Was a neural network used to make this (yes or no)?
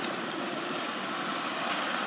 no